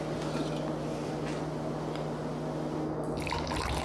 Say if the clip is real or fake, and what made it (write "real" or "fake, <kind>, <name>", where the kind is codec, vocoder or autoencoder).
real